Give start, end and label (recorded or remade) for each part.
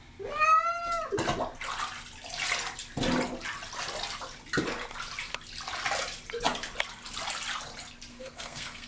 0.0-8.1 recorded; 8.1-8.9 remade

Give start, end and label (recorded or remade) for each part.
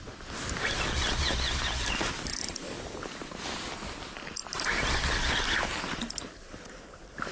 0.0-7.3 recorded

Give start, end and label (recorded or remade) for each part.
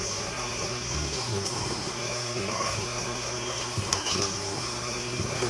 0.0-5.5 remade